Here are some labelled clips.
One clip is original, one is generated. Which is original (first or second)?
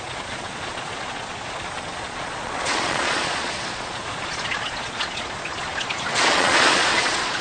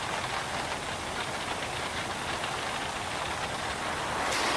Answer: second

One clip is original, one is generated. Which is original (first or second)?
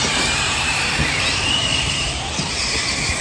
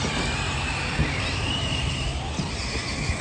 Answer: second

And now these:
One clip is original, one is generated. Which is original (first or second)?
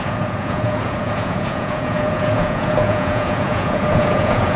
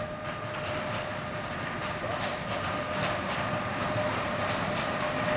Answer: second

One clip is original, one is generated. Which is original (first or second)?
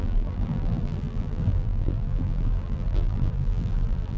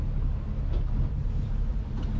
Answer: second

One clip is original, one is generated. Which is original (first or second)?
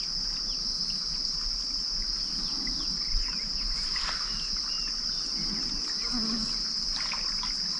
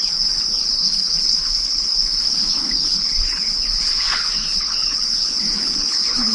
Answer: first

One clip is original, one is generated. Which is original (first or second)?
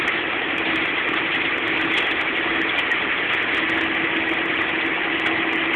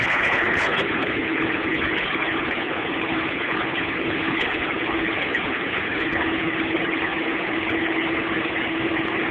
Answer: first